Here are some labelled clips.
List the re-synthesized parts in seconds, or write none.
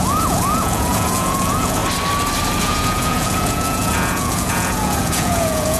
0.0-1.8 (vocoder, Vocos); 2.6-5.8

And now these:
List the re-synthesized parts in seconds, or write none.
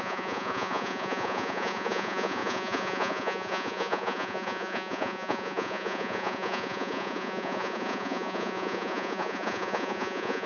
0.0-10.5 (vocoder, Vocos)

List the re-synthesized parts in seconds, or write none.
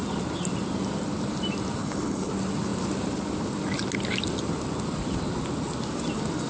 1.8-2.3 (codec, HILCodec)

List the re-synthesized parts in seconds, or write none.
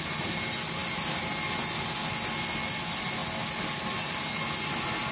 none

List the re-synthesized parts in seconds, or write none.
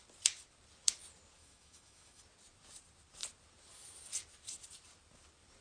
1.4-2.2 (autoencoder, DAC-VAE)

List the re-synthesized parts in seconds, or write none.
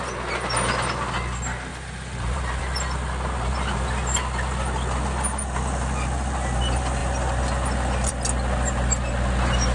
1.7-2.6 (vocoder, BigVGAN v2)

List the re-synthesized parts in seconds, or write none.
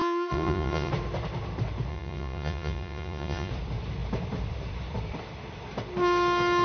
0.0-0.9 (vocoder, Vocos); 1.9-3.5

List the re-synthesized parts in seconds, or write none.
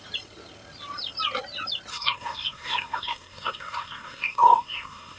1.9-5.2 (codec, SNAC)